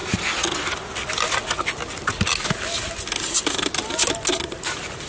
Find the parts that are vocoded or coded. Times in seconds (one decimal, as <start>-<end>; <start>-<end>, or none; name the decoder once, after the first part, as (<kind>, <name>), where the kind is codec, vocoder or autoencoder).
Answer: none

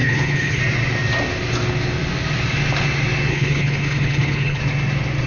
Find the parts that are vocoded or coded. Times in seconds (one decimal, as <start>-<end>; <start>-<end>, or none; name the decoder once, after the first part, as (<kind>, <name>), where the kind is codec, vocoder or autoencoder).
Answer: 0.0-0.6 (codec, HILCodec); 3.3-4.6

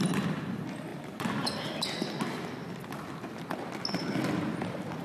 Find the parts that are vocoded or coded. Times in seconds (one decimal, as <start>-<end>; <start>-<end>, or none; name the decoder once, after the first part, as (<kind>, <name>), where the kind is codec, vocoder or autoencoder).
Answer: none

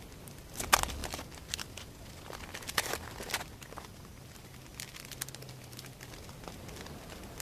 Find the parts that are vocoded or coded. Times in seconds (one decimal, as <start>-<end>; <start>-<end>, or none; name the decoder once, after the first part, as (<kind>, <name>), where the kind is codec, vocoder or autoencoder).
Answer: none

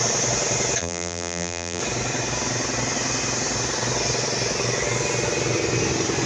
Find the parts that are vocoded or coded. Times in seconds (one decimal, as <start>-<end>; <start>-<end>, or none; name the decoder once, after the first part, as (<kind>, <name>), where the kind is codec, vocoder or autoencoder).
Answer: 0.8-1.8 (vocoder, BigVGAN v2)